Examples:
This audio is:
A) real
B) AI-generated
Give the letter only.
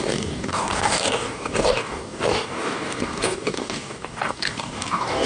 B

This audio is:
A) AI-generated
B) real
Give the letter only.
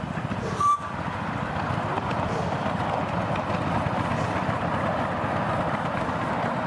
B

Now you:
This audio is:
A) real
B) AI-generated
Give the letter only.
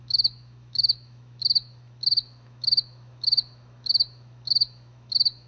B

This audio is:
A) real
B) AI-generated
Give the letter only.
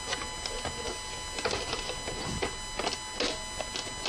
A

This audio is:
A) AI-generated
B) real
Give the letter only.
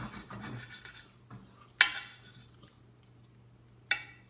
B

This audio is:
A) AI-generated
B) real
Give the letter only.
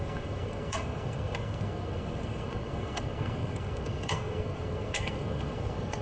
A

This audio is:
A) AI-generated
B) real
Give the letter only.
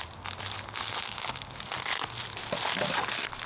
B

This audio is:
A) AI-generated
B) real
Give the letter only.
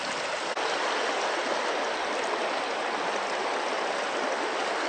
B